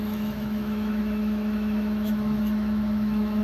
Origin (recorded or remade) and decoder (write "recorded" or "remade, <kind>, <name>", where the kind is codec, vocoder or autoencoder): remade, autoencoder, DAC-VAE